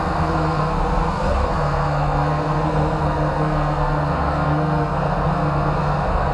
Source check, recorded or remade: remade